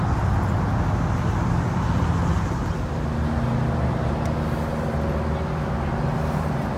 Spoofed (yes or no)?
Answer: no